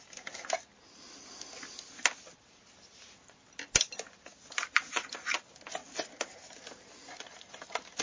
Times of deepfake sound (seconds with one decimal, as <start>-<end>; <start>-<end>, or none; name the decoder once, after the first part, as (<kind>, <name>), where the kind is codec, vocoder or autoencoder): 5.8-6.4 (vocoder, BigVGAN v2)